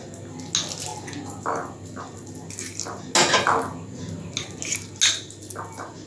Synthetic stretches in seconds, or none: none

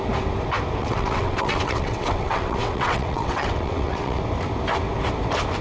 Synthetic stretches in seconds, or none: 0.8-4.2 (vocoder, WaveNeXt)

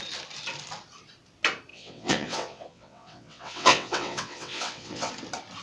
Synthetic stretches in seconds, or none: 1.7-5.1 (vocoder, WaveNeXt)

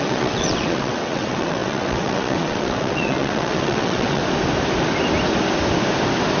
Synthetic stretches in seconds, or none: 0.0-4.2 (vocoder, WaveNeXt)